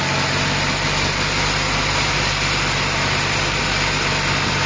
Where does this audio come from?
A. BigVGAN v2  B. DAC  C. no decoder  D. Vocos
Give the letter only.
C